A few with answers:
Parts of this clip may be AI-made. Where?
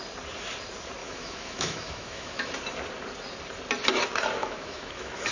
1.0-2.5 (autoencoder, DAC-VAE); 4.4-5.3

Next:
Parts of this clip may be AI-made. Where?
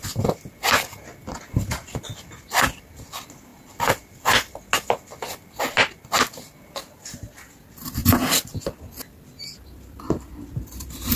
none